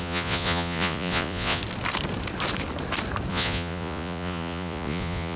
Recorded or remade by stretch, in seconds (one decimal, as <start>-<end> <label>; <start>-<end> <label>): 0.0-1.6 remade; 1.6-3.3 recorded; 3.3-5.4 remade